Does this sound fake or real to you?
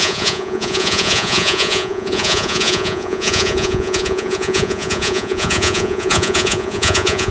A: fake